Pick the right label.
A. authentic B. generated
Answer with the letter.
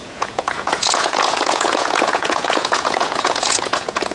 B